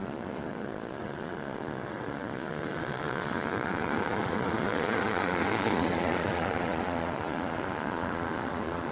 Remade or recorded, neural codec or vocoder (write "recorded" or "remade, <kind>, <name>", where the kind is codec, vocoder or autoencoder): remade, vocoder, Vocos